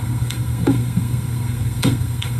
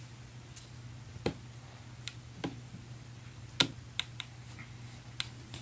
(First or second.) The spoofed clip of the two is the first